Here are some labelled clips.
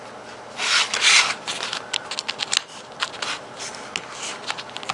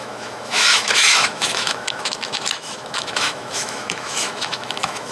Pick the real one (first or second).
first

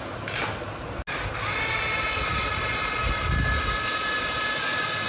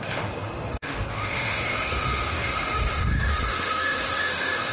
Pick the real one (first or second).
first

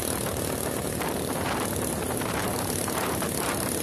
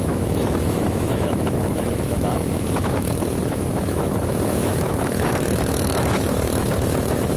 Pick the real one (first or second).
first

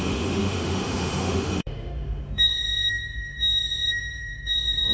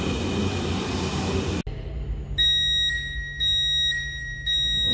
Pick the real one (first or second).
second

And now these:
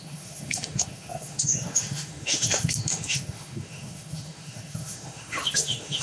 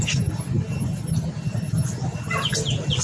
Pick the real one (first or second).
second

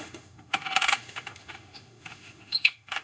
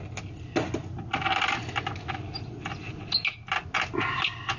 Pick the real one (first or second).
second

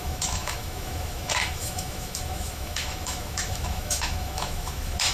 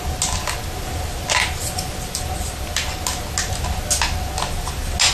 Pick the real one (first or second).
second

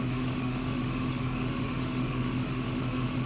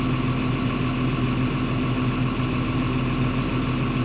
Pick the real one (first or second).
second